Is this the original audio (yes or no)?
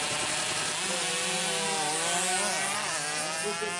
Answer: yes